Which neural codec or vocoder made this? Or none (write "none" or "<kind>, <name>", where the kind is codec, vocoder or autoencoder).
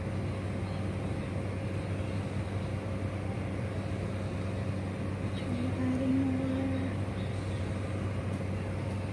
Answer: none